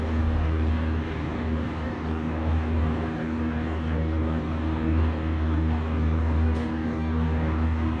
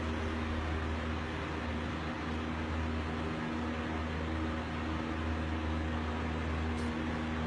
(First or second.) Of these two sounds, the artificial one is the first